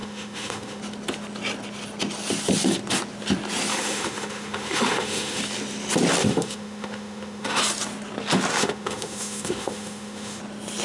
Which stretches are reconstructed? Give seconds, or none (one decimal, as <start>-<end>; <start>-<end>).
0.0-0.8; 3.7-5.4; 6.2-7.6; 8.5-10.4